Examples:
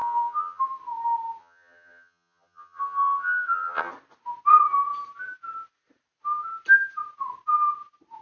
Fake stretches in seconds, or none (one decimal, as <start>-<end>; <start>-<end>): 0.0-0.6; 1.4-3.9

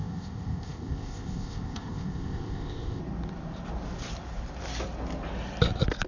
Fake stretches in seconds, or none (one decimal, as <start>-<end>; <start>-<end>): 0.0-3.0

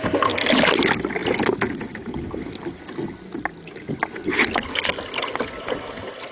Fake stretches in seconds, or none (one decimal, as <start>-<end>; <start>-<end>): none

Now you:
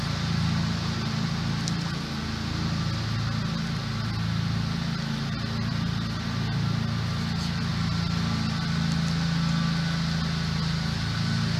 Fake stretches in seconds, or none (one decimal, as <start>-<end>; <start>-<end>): none

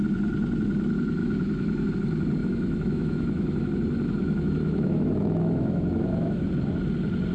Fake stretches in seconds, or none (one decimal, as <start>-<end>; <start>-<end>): 1.2-1.9; 2.4-3.7; 4.2-6.5

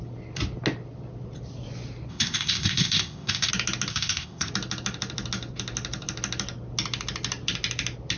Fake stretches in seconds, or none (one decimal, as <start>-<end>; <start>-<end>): 2.1-3.5; 3.9-4.5

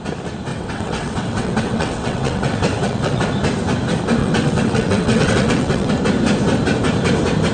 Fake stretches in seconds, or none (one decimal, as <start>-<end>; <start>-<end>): 0.5-3.2; 4.2-5.9